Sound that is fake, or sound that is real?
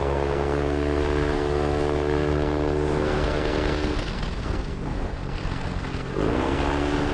fake